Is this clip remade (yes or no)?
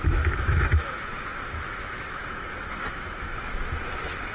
yes